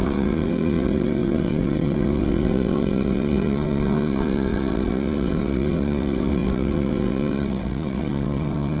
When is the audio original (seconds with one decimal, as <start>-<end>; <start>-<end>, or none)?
none